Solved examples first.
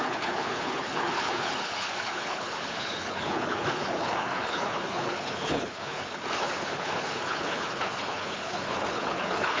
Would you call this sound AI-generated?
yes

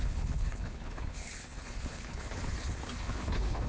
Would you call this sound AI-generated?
yes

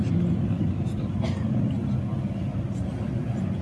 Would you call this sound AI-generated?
no